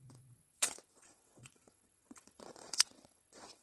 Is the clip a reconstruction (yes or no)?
yes